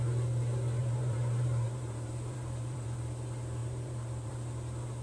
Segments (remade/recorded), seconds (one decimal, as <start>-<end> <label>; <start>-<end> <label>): 0.0-0.8 recorded; 0.8-3.0 remade; 3.0-3.6 recorded; 3.6-4.3 remade; 4.3-5.0 recorded